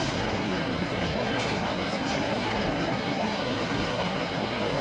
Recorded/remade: remade